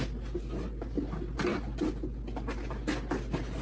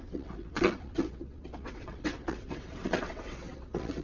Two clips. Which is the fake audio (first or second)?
second